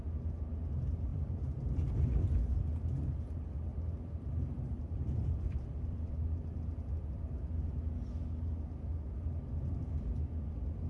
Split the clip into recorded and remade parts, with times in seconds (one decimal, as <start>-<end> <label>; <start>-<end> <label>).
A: 0.0-1.1 recorded; 1.1-3.0 remade; 3.0-3.7 recorded; 3.7-7.5 remade; 7.5-10.9 recorded